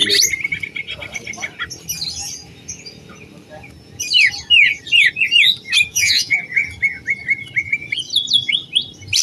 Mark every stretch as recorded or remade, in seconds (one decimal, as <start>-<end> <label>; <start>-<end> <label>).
0.0-5.9 recorded; 5.9-6.4 remade; 6.4-9.2 recorded